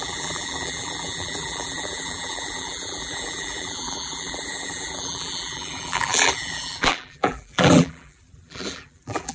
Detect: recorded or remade remade